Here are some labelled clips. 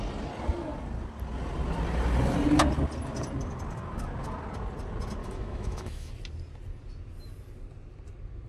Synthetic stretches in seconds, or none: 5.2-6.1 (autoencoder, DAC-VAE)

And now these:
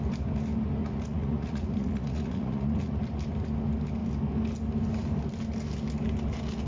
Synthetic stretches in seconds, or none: 0.8-3.0 (vocoder, Vocos)